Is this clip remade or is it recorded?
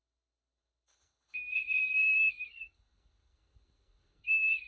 remade